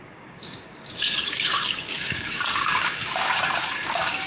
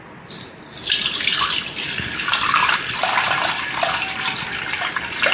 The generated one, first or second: first